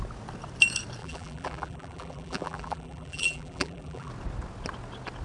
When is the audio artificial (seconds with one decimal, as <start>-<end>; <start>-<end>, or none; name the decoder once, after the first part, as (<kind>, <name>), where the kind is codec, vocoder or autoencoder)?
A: 1.0-4.1 (vocoder, BigVGAN v2)